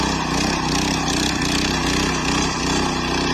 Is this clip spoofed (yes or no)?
no